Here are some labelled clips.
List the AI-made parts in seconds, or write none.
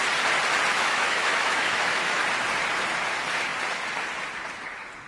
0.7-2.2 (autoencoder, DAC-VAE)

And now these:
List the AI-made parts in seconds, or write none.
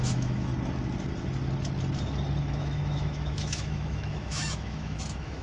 0.0-0.5 (autoencoder, DAC-VAE); 2.4-5.4